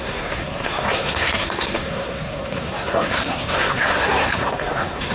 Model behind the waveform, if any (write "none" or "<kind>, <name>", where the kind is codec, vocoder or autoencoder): codec, SNAC